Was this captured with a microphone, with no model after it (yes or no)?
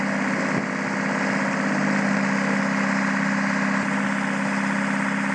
yes